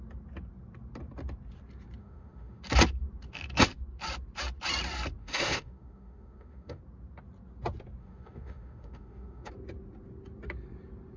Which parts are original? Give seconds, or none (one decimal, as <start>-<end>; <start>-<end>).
0.0-2.0; 2.6-5.2; 6.8-8.0; 9.5-11.2